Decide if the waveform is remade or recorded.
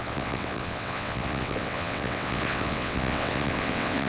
remade